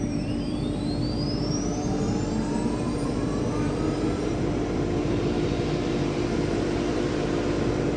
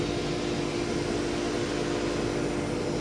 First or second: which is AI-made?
first